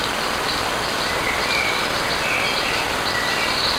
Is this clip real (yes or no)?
yes